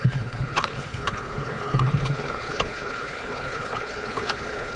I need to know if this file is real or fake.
fake